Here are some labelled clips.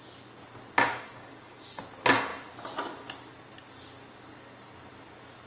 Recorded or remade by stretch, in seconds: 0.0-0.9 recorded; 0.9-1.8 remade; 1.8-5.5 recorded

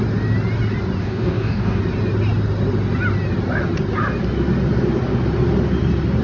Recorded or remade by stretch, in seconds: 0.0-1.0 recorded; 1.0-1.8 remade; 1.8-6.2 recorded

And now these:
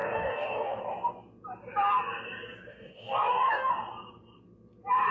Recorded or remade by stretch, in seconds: 0.0-0.8 remade; 0.8-2.7 recorded; 2.7-3.7 remade; 3.7-5.1 recorded

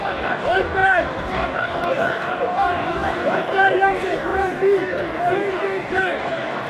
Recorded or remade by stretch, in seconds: 0.0-6.7 remade